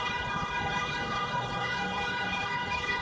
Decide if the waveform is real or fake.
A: fake